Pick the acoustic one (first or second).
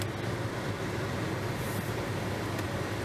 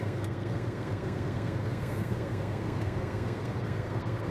first